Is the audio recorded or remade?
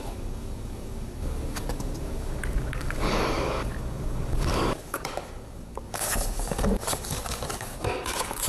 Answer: remade